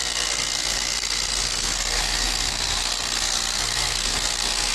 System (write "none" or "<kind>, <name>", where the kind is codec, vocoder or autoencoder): codec, SNAC